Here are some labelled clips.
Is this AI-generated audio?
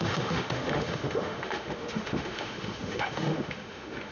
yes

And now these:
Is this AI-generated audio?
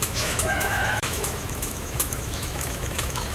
yes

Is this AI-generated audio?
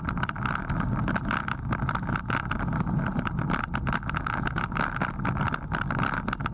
no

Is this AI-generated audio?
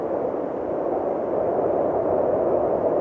no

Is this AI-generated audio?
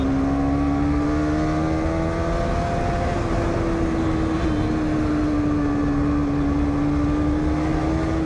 no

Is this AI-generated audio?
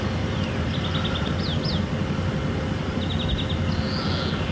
no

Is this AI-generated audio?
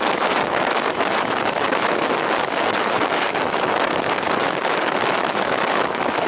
yes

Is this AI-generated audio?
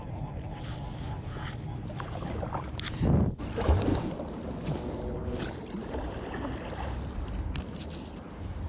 no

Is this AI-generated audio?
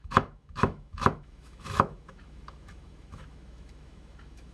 yes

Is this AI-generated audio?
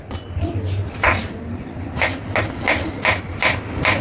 no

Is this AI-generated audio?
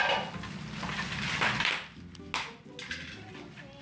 no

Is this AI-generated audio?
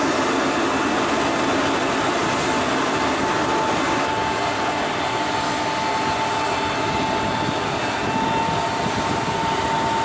no